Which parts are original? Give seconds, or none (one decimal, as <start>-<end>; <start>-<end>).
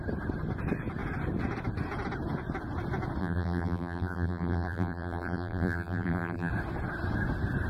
0.0-3.2; 6.5-7.7